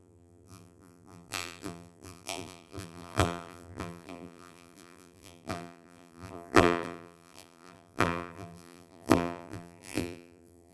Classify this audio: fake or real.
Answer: fake